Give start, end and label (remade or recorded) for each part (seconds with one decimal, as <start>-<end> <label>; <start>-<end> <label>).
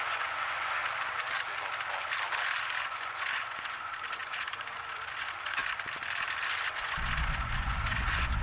0.0-0.8 remade; 0.8-2.8 recorded; 2.8-5.6 remade; 5.6-6.7 recorded; 6.7-8.4 remade